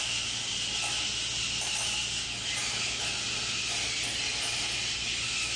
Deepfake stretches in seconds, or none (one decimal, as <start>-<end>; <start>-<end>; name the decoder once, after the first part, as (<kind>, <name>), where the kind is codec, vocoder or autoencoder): none